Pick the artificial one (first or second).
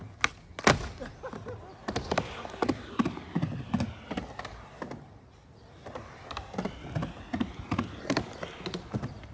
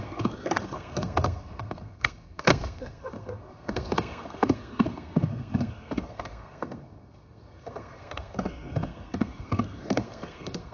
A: second